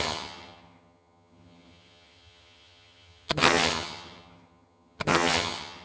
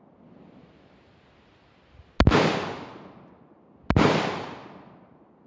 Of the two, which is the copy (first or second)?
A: first